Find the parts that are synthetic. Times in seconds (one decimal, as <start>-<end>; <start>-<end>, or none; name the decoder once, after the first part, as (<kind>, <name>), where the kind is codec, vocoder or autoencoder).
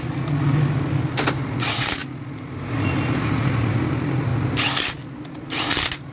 none